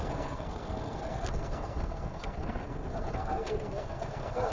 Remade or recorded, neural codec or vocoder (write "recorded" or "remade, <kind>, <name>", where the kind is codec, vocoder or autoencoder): remade, codec, SNAC